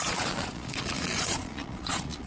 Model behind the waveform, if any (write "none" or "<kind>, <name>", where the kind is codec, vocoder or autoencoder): vocoder, Vocos